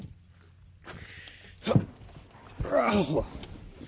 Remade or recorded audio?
recorded